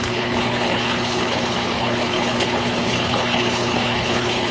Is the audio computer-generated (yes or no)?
yes